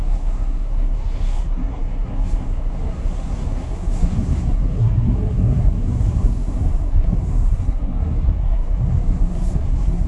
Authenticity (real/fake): fake